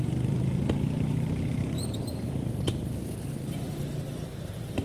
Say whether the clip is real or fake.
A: fake